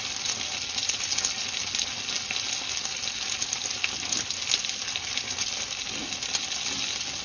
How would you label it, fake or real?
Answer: real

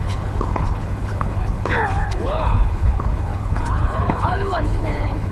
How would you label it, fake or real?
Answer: fake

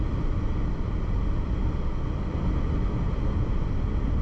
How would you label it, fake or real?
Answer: real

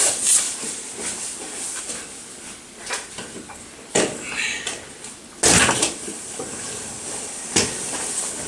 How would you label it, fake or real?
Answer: real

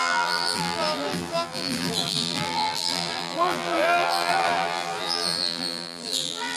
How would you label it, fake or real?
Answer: fake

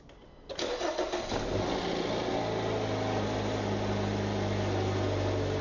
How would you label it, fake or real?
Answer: real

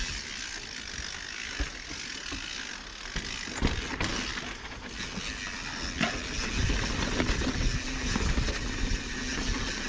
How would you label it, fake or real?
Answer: real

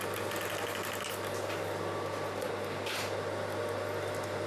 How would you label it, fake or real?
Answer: real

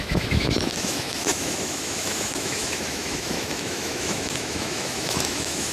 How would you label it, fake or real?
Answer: fake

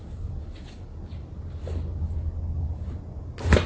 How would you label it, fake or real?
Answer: real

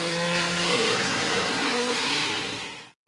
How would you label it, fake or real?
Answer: fake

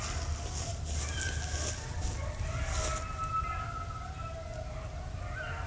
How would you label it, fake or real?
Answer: real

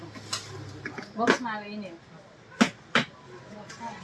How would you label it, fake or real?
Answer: real